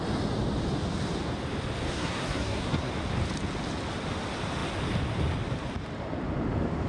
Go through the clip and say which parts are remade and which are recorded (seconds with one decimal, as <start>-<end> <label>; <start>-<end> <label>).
0.0-1.9 recorded; 1.9-2.9 remade; 2.9-6.9 recorded